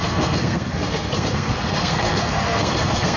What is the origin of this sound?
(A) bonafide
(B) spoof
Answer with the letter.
B